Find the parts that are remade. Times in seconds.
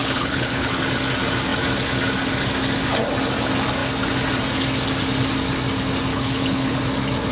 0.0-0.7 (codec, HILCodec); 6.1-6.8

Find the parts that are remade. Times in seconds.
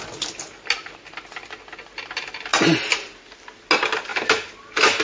none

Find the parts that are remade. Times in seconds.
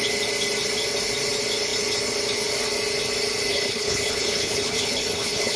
3.5-5.6 (codec, HILCodec)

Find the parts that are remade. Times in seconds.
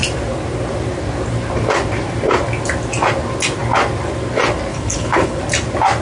4.7-5.4 (codec, HILCodec)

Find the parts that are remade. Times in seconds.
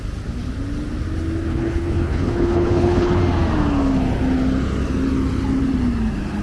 1.5-3.2 (codec, HILCodec)